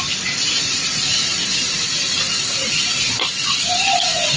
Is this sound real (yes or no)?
yes